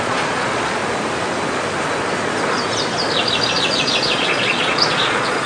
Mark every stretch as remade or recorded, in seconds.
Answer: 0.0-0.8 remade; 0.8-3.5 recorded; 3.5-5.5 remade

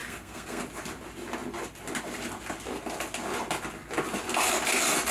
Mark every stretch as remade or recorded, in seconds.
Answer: 0.0-0.6 remade; 0.6-5.1 recorded

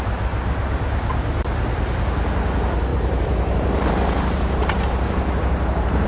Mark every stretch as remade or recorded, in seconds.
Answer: 0.0-2.9 recorded; 2.9-6.1 remade

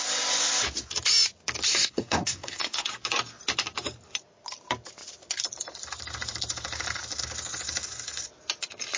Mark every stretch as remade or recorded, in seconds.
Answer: 0.0-1.7 recorded; 1.7-2.9 remade; 2.9-9.0 recorded

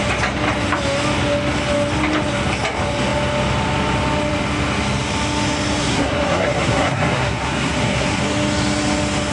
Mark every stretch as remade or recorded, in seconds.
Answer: 0.0-5.8 recorded; 5.8-8.2 remade; 8.2-9.3 recorded

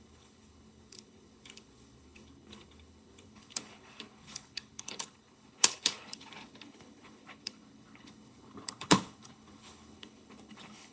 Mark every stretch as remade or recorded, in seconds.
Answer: 0.0-10.9 remade

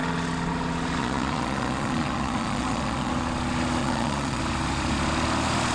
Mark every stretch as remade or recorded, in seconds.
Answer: 0.0-1.0 recorded; 1.0-3.1 remade; 3.1-3.8 recorded; 3.8-4.4 remade; 4.4-5.7 recorded

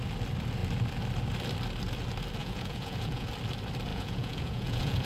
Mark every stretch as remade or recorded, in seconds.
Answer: 0.0-2.4 recorded; 2.4-3.3 remade; 3.3-3.9 recorded; 3.9-5.1 remade